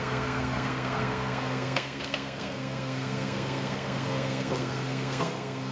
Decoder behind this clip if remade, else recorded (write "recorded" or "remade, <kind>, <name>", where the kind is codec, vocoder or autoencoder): remade, codec, SNAC